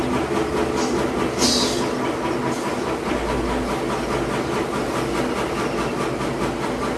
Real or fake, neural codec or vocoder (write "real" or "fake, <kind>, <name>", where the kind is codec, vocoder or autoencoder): real